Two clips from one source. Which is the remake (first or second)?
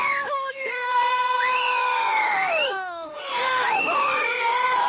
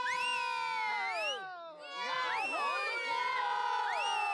first